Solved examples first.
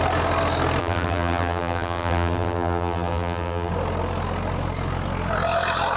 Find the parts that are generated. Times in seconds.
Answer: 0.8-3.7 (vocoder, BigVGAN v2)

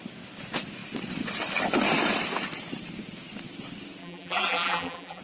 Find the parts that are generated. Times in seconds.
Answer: 4.0-5.2 (vocoder, BigVGAN v2)